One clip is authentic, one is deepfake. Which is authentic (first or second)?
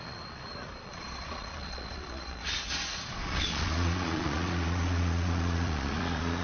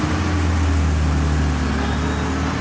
second